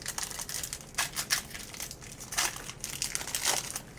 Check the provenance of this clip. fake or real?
real